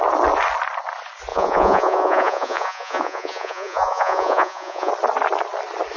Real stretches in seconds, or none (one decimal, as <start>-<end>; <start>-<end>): 0.0-1.3; 4.9-6.0